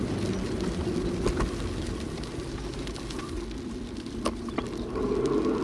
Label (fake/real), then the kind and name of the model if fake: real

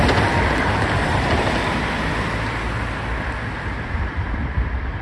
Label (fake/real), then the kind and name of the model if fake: fake, vocoder, BigVGAN v2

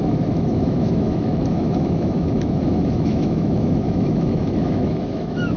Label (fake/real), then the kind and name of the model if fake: fake, autoencoder, DAC-VAE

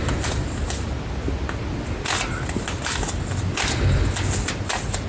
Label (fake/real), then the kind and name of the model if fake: real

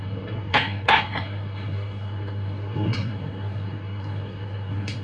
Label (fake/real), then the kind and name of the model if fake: fake, codec, SNAC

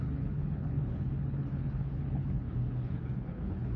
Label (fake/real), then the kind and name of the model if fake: fake, codec, HILCodec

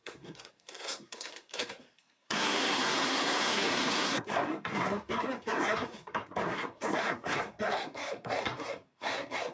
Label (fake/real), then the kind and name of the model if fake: fake, codec, SNAC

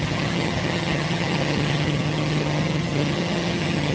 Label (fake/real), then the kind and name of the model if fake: fake, vocoder, HiFi-GAN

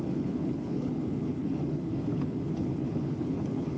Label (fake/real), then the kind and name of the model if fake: fake, codec, HILCodec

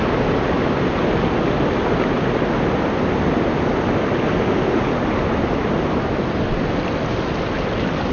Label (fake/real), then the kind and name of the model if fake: real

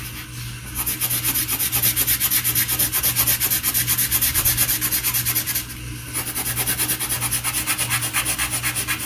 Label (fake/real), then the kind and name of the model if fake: real